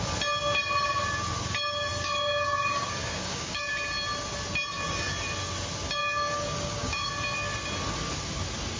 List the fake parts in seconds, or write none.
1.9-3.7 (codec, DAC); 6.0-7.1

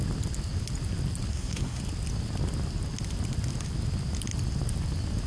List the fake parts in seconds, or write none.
1.3-1.8 (codec, SNAC)